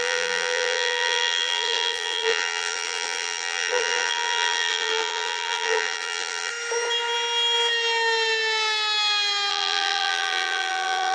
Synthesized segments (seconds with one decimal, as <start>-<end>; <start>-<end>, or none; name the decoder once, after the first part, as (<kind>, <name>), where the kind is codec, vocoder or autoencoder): 0.0-6.5 (vocoder, BigVGAN v2); 9.5-11.1